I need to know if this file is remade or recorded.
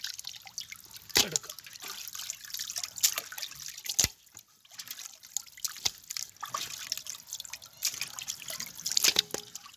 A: recorded